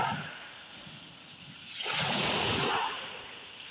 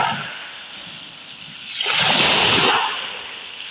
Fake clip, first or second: first